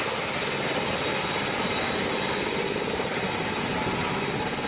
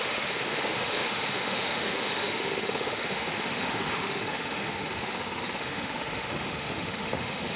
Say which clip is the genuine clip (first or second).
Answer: first